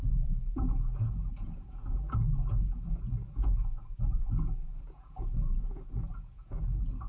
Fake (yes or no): yes